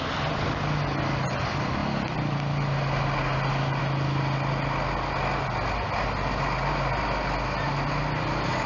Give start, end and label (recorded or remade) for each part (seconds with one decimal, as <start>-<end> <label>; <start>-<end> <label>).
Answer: 0.0-8.7 recorded